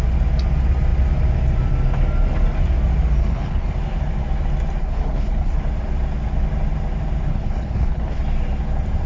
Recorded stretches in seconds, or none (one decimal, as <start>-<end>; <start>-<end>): 0.0-3.2; 3.7-4.8; 5.6-7.3; 8.2-9.1